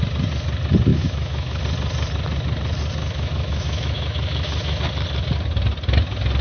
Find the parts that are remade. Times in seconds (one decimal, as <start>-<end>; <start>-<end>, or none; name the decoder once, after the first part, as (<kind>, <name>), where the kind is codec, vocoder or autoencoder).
0.9-1.6 (autoencoder, DAC-VAE); 3.0-4.8